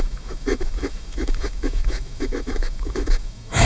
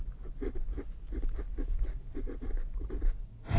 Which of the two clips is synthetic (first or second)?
first